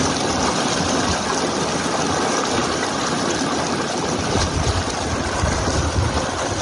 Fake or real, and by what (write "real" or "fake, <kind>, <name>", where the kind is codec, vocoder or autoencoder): real